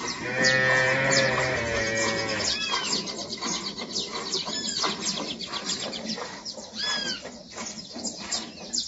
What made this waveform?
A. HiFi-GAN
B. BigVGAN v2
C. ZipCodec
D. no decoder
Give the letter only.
D